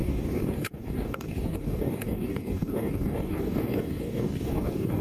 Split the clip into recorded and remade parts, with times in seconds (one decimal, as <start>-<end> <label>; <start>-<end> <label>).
0.0-5.0 remade